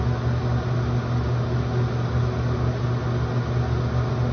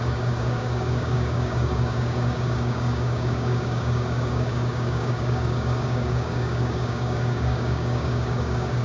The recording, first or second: first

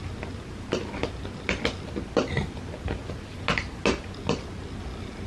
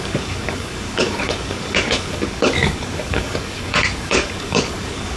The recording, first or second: first